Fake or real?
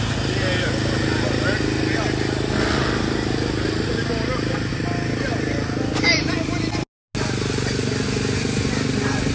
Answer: real